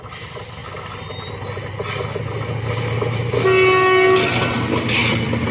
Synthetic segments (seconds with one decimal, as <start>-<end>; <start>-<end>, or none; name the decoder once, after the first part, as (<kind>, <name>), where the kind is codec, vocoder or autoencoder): none